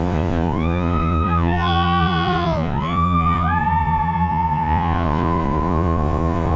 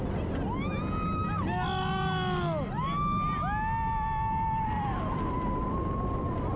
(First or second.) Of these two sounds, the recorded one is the second